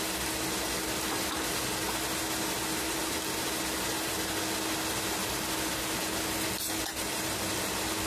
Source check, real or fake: real